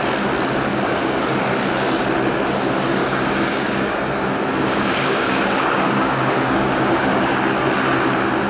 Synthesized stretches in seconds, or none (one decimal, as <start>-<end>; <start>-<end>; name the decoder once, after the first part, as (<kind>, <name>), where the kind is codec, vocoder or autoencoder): 0.7-1.2 (codec, DAC); 3.0-7.4